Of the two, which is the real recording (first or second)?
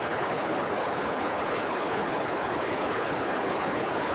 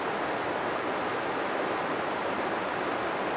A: second